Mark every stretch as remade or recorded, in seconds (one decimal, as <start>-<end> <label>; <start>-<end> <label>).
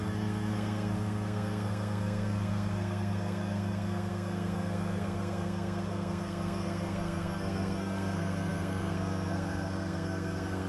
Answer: 0.0-10.7 remade